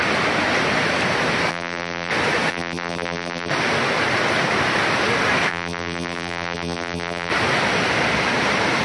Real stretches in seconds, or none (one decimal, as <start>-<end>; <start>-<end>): 0.0-1.5; 2.1-2.5; 3.5-5.5; 7.3-8.8